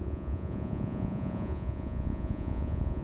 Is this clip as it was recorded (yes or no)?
no